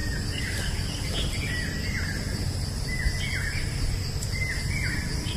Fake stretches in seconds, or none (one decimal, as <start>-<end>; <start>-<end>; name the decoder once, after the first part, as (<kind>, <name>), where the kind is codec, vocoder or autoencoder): none